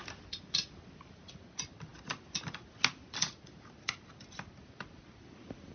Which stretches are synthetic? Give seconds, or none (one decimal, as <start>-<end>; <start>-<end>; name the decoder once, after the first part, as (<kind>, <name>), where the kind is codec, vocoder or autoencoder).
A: none